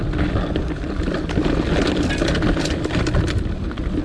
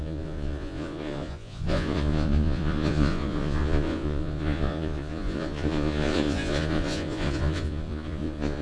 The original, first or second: first